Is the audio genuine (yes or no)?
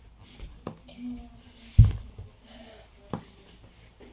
yes